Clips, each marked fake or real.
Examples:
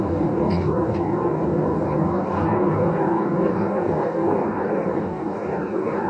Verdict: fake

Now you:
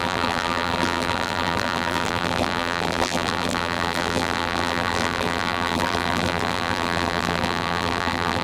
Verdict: fake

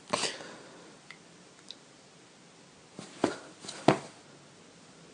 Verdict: real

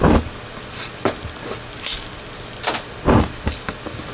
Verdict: real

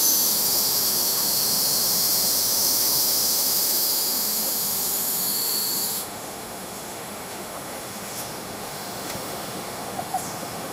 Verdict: fake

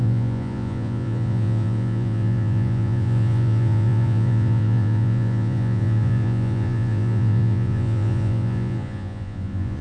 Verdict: fake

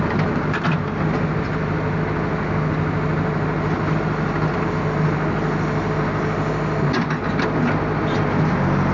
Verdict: real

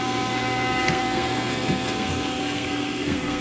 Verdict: fake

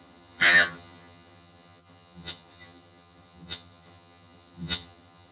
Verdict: fake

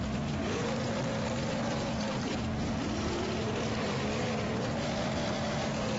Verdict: fake